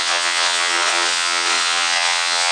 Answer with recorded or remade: remade